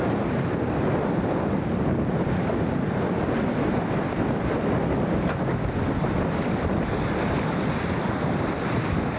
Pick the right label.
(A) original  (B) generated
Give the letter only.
A